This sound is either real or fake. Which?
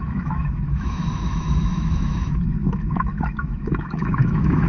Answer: fake